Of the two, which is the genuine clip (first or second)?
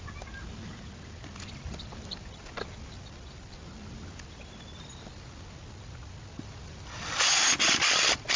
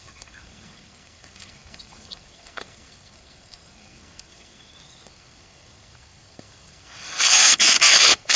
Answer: first